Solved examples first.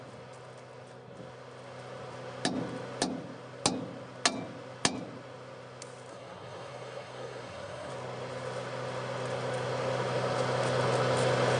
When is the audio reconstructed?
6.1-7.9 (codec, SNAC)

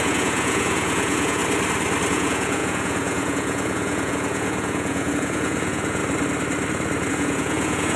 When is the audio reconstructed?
0.0-1.4 (vocoder, Vocos); 2.1-6.0; 7.1-8.0

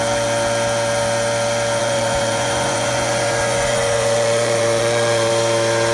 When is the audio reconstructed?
1.8-5.3 (vocoder, Vocos)

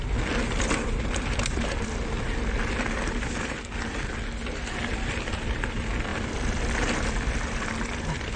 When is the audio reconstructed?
none

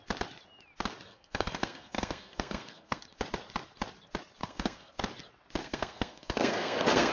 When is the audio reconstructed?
1.1-3.0 (codec, SNAC); 4.4-5.0; 5.6-7.1